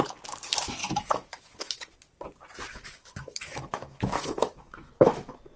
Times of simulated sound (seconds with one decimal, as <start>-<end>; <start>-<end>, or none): 0.8-1.7; 2.7-5.6